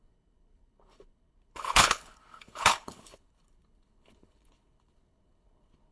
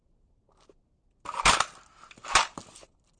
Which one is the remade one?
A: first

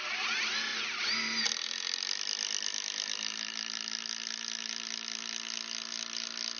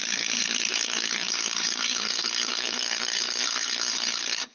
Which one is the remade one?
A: second